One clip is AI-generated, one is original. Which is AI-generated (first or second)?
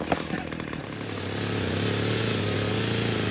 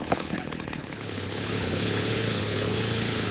second